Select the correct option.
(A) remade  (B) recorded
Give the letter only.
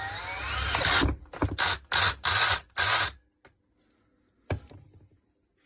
B